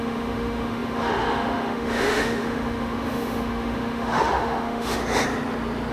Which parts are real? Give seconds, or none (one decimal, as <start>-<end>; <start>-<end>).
5.0-5.9